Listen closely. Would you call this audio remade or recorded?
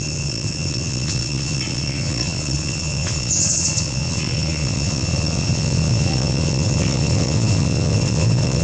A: remade